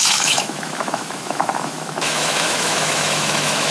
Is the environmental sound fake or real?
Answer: fake